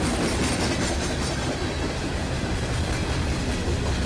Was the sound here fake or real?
real